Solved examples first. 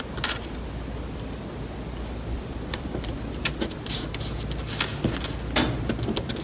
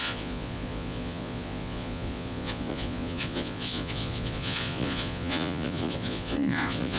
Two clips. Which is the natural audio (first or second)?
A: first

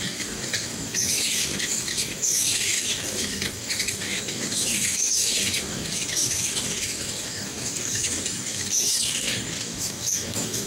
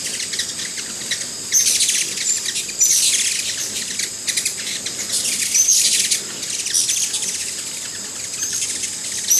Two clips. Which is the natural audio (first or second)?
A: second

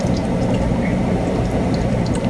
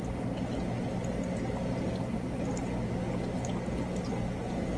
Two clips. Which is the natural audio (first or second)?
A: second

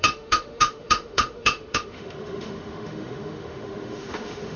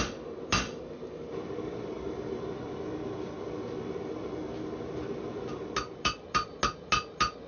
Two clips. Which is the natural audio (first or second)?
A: second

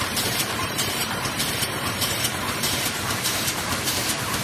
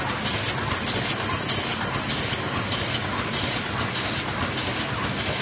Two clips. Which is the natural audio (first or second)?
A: second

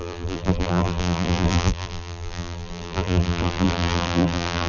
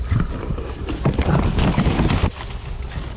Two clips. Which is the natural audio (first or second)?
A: second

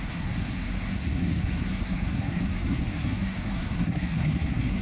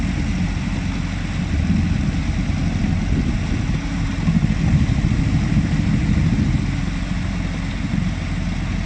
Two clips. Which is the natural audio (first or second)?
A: second